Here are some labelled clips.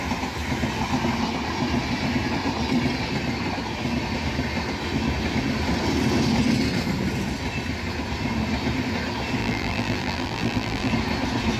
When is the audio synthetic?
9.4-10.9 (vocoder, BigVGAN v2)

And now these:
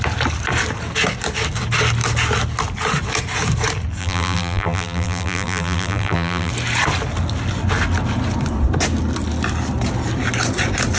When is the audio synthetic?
4.0-6.5 (vocoder, BigVGAN v2)

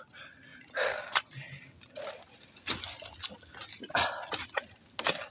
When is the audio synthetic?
none